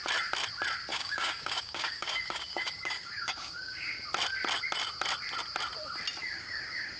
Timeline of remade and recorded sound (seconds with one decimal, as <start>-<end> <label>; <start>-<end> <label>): 0.0-0.9 recorded; 0.9-3.9 remade; 3.9-6.2 recorded; 6.2-7.0 remade